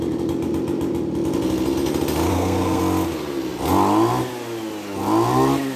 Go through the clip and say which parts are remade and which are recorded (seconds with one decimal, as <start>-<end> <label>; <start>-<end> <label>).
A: 0.0-2.3 recorded; 2.3-2.8 remade; 2.8-5.8 recorded